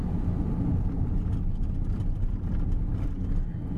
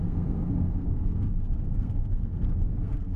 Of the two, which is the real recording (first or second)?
first